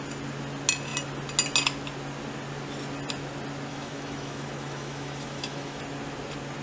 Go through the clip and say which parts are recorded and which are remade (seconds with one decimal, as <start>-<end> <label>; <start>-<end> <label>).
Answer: 0.0-3.7 recorded; 3.7-5.8 remade; 5.8-6.6 recorded